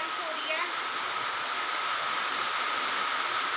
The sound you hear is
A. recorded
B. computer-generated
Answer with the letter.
A